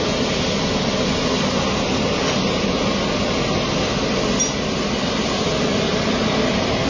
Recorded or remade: recorded